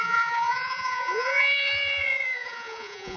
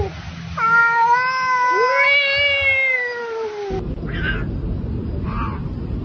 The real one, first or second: second